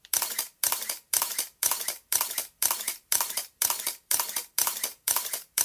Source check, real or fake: fake